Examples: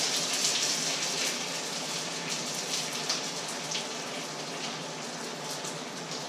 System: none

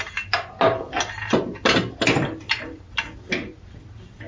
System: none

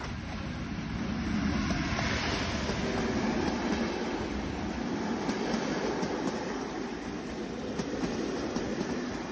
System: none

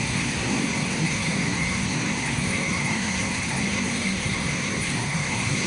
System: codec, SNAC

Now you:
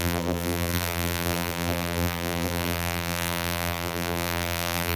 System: vocoder, BigVGAN v2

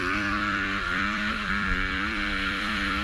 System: vocoder, BigVGAN v2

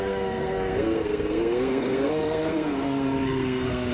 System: codec, SNAC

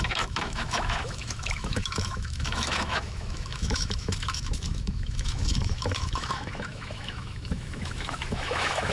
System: autoencoder, DAC-VAE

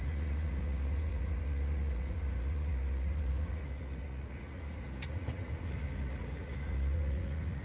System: vocoder, Vocos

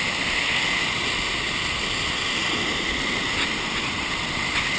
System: none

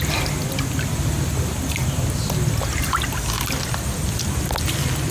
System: none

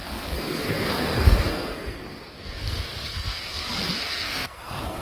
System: codec, SNAC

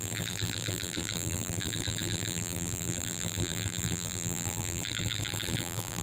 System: vocoder, BigVGAN v2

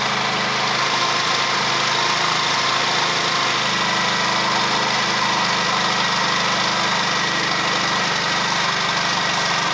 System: none